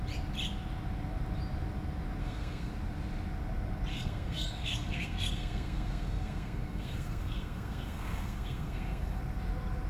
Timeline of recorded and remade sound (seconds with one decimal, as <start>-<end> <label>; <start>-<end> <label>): 0.0-2.2 recorded; 2.2-2.7 remade; 2.7-3.9 recorded; 3.9-9.2 remade; 9.2-9.9 recorded